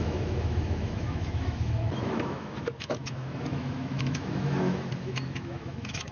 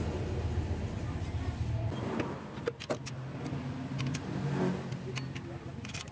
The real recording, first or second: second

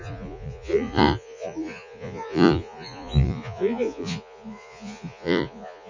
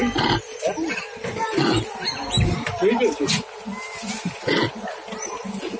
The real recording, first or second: second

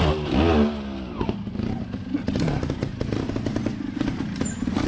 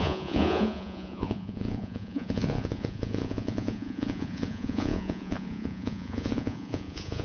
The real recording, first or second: first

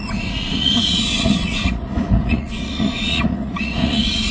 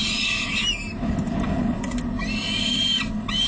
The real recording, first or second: second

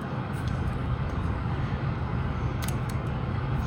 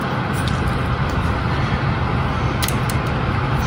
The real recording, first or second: second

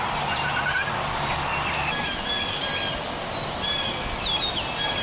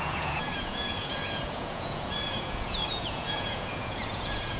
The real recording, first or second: first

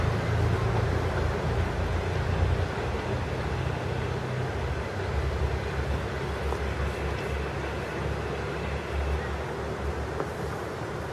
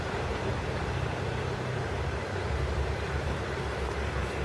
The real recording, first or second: first